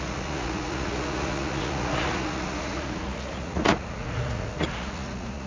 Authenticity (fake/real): fake